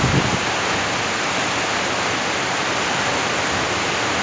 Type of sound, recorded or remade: recorded